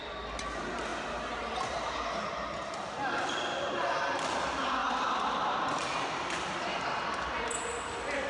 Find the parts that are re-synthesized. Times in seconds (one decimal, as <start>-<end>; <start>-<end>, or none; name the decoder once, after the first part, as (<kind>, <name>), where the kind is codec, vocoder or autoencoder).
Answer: none